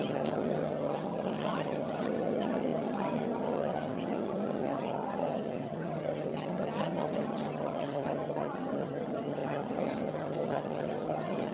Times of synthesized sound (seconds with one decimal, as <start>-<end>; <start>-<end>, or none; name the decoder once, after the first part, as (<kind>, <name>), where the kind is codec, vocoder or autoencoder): 0.0-11.5 (vocoder, HiFi-GAN)